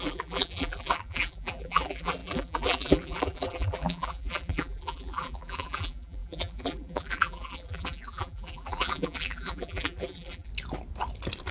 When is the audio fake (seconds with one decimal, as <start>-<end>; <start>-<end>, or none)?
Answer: 0.0-10.5